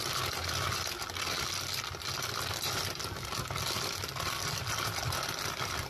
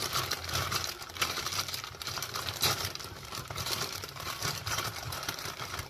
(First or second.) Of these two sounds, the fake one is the second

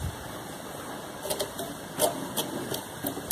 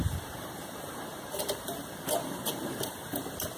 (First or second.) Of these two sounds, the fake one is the second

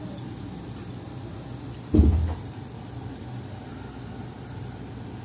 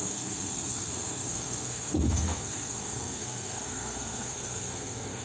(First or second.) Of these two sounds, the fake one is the second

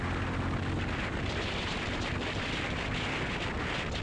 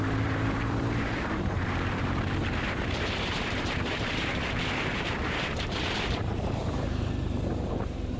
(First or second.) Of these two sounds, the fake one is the second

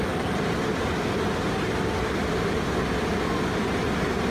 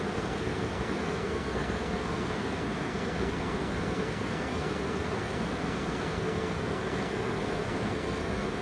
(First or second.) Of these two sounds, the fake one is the second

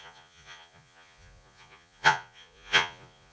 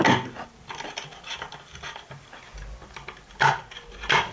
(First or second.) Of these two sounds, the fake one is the first